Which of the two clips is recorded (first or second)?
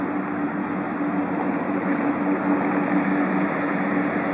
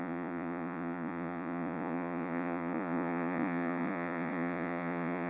first